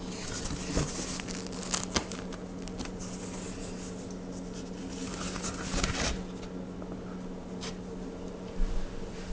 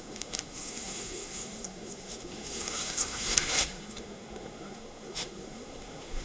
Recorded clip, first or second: first